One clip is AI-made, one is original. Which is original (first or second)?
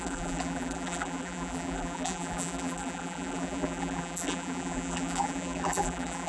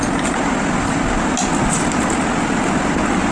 second